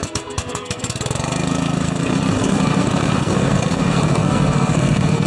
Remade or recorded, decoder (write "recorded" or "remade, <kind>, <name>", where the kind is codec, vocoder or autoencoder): remade, codec, SNAC